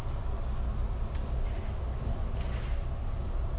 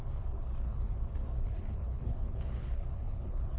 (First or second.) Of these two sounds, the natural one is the first